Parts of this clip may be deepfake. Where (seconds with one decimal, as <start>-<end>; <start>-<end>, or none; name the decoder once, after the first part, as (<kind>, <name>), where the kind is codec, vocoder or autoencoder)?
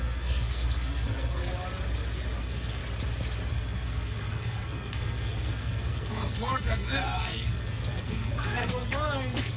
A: 0.0-1.4 (codec, SNAC); 2.4-2.8; 3.5-9.6